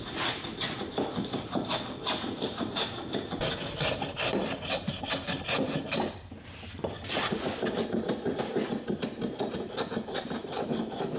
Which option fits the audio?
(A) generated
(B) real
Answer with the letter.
B